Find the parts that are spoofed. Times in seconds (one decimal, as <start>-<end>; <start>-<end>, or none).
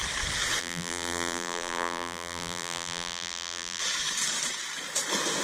0.6-3.8